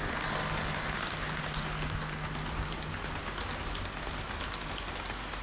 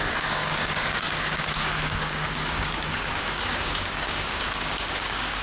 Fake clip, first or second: second